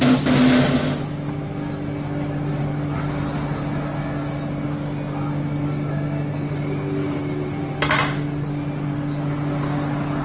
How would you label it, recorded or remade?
recorded